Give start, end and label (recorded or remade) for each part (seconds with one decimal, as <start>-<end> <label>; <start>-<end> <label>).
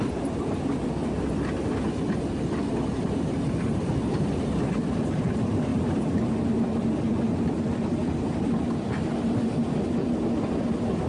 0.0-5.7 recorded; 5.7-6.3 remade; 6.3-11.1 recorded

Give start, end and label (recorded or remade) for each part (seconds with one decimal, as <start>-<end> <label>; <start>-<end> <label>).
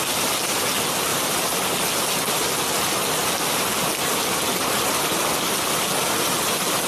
0.0-6.9 recorded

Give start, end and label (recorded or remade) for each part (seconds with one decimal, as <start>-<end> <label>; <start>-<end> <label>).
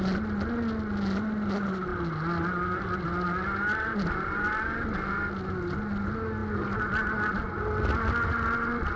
0.0-9.0 recorded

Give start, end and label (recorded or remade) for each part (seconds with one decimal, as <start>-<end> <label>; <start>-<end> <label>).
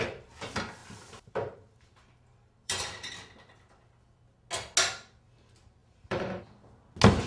0.0-0.8 recorded; 0.8-3.1 remade; 3.1-5.8 recorded; 5.8-6.4 remade; 6.4-7.3 recorded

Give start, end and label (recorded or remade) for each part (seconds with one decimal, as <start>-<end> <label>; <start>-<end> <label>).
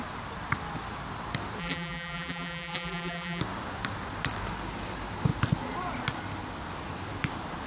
0.0-1.6 recorded; 1.6-3.4 remade; 3.4-7.7 recorded